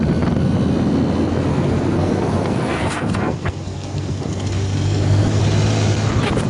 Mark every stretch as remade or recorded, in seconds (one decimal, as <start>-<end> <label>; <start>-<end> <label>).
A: 0.0-1.5 recorded; 1.5-5.4 remade; 5.4-6.5 recorded